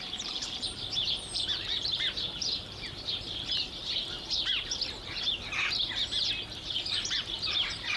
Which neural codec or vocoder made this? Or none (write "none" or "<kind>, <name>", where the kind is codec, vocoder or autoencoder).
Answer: vocoder, BigVGAN v2